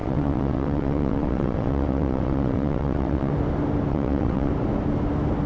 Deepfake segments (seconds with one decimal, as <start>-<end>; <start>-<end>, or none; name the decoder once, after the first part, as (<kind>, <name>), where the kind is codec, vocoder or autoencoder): 0.0-3.3 (vocoder, WaveNeXt); 3.9-4.5